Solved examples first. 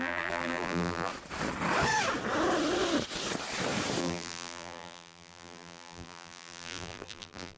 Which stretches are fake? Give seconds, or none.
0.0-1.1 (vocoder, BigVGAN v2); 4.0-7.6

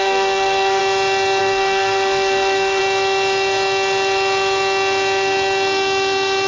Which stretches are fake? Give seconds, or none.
0.0-0.8 (codec, SNAC); 1.4-2.8

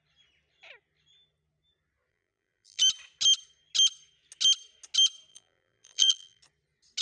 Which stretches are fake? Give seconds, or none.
2.1-2.8 (vocoder, BigVGAN v2); 5.3-6.4

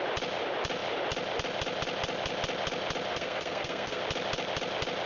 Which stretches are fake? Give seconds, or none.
3.1-4.0 (codec, SNAC)

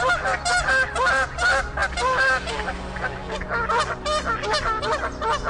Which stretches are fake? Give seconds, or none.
none